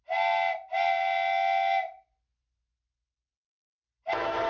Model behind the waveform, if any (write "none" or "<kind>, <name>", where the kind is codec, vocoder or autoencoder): none